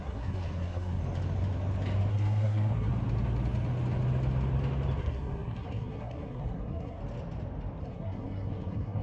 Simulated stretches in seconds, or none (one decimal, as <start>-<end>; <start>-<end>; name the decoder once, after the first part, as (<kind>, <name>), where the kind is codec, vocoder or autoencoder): 0.0-1.0 (codec, SNAC); 2.1-2.9; 5.0-7.0; 7.8-9.0